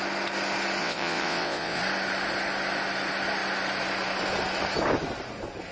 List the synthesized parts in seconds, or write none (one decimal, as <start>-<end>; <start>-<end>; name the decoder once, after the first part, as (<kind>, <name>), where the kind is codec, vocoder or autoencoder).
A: 0.8-1.8 (vocoder, WaveNeXt)